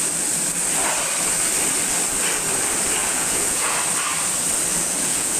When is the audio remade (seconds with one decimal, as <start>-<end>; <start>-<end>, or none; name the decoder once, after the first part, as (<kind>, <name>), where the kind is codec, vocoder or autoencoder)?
3.0-3.8 (vocoder, Vocos); 4.7-5.4

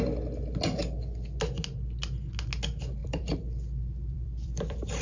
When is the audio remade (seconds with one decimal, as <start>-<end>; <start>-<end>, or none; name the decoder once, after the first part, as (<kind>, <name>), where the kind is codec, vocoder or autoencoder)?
3.0-5.0 (vocoder, BigVGAN v2)

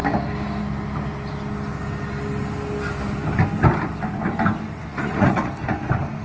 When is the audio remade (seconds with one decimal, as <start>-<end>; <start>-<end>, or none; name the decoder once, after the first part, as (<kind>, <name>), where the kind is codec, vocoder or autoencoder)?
4.9-5.5 (vocoder, Vocos)

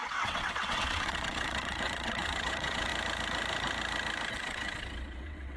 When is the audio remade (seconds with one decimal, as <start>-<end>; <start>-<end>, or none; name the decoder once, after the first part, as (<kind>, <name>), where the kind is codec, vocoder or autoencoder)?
0.0-2.9 (vocoder, WaveNeXt); 4.3-5.6

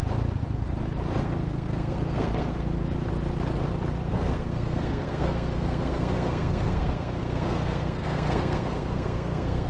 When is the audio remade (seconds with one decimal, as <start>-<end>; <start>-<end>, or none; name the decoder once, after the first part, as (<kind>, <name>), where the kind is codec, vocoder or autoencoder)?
1.2-2.8 (codec, SNAC); 4.0-9.7